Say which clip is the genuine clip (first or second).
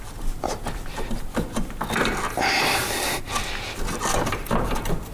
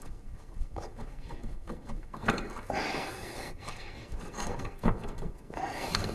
first